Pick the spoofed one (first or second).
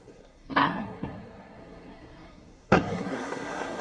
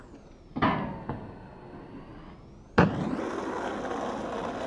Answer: first